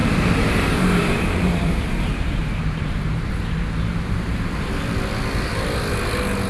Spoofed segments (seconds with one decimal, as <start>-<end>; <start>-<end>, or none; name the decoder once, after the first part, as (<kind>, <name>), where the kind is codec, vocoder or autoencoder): 0.0-3.3 (vocoder, BigVGAN v2)